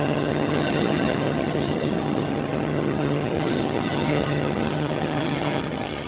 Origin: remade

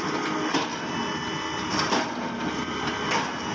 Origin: recorded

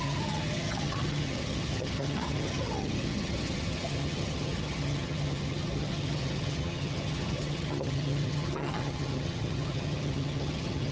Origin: remade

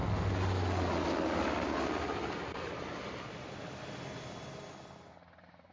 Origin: recorded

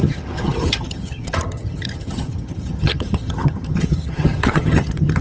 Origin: remade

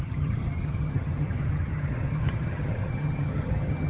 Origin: remade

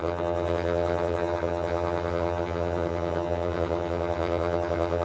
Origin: remade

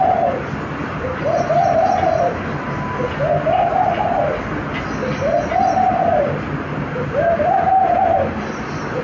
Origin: recorded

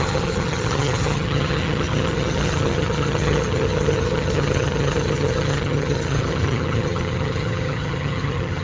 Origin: remade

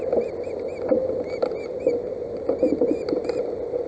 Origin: recorded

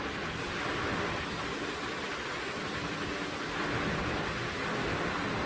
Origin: recorded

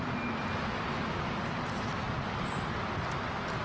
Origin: recorded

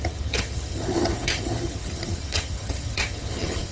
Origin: remade